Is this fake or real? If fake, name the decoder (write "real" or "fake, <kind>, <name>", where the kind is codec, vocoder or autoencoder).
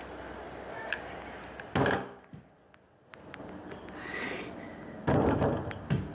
real